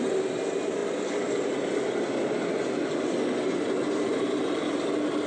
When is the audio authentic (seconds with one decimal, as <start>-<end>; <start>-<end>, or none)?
0.0-5.3